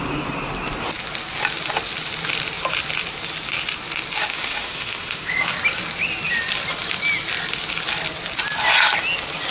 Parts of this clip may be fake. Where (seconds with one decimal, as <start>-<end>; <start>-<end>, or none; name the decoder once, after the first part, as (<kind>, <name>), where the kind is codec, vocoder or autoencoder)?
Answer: 4.3-5.3 (autoencoder, DAC-VAE)